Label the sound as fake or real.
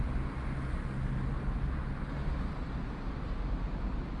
real